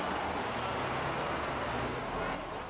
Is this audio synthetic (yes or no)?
no